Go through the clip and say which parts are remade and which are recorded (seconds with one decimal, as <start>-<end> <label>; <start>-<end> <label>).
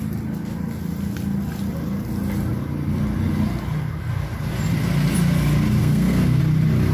0.0-5.8 recorded; 5.8-6.4 remade; 6.4-6.9 recorded